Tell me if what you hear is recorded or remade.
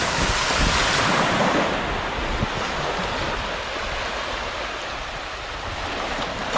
recorded